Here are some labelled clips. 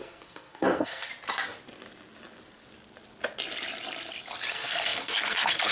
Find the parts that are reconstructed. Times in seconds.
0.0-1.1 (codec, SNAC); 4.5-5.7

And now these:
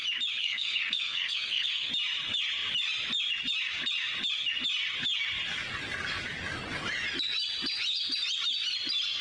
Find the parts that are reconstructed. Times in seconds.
0.4-1.9 (codec, SNAC)

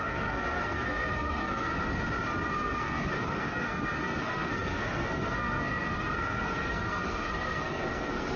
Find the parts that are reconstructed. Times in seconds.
0.0-1.7 (codec, SNAC); 2.5-8.4

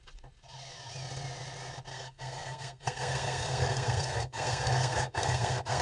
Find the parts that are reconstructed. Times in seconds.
1.9-5.8 (codec, SNAC)

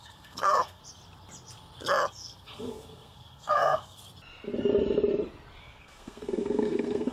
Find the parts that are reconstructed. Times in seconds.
0.0-0.8 (codec, SNAC); 2.1-4.0; 5.6-7.1

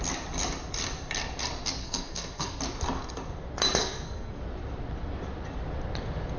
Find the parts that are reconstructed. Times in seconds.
1.8-2.6 (codec, SNAC); 3.8-4.4